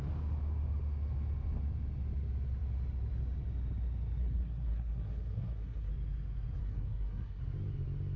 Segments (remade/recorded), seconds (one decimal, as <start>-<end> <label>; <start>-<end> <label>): 0.0-4.2 recorded; 4.2-5.9 remade; 5.9-6.6 recorded; 6.6-7.4 remade; 7.4-8.2 recorded